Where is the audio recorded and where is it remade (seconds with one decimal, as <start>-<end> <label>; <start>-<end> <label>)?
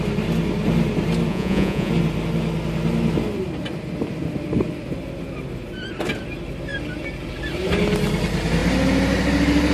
0.0-1.3 recorded; 1.3-1.9 remade; 1.9-9.7 recorded